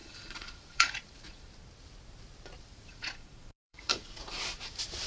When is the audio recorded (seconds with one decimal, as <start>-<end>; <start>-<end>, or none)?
1.5-2.7; 4.6-5.1